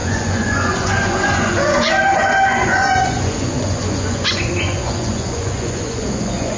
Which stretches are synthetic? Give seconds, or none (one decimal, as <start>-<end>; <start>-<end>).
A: 0.0-6.6